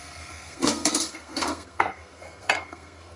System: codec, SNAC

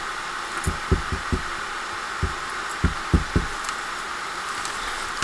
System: none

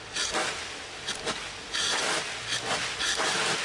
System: none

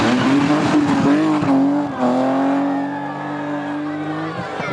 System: none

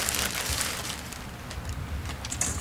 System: none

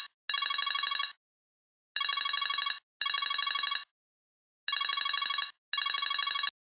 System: none